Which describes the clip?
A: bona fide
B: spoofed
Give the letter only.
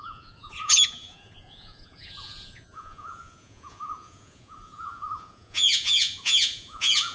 B